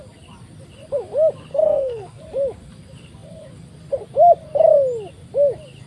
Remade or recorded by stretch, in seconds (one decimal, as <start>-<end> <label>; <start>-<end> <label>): 0.0-1.5 recorded; 1.5-2.2 remade; 2.2-5.9 recorded